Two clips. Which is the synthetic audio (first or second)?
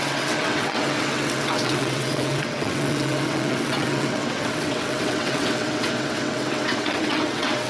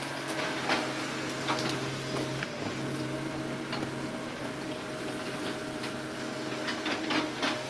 first